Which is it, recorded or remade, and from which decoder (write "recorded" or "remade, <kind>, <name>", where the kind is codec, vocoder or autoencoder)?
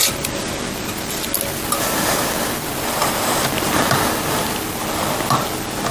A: recorded